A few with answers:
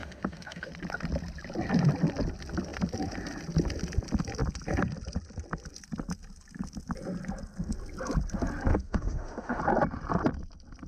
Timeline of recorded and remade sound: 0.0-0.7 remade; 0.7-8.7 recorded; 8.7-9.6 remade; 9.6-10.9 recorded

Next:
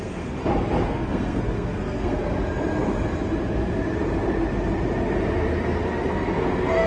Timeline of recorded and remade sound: 0.0-0.4 remade; 0.4-0.9 recorded; 0.9-2.2 remade; 2.2-6.1 recorded; 6.1-6.9 remade

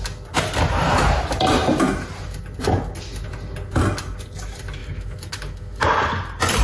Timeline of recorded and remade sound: 0.0-4.8 recorded; 4.8-5.8 remade; 5.8-6.6 recorded

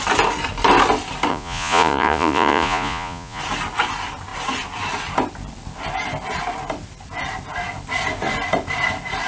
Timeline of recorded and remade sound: 0.0-1.3 recorded; 1.3-3.4 remade; 3.4-9.3 recorded

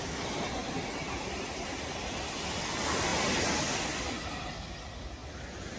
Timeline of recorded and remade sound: 0.0-0.6 recorded; 0.6-1.8 remade; 1.8-5.8 recorded

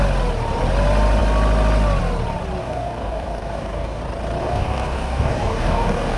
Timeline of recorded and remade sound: 0.0-2.6 recorded; 2.6-4.0 remade; 4.0-4.4 recorded; 4.4-6.2 remade

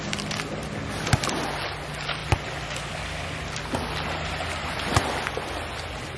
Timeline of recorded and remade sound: 0.0-6.2 recorded

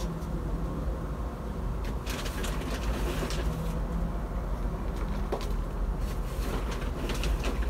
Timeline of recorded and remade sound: 0.0-7.7 recorded